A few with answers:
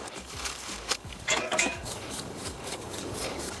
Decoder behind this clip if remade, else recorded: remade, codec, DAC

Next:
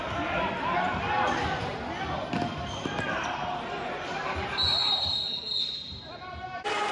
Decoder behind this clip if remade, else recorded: recorded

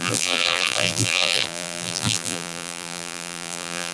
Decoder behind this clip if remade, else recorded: remade, vocoder, BigVGAN v2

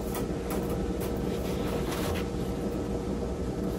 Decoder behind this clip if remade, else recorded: recorded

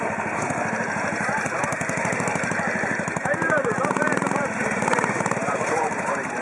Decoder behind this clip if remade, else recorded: remade, vocoder, BigVGAN v2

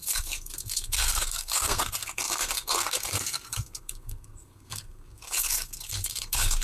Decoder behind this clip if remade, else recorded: remade, codec, SNAC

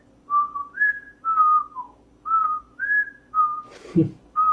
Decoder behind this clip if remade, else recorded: recorded